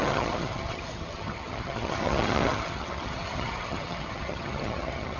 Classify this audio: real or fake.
fake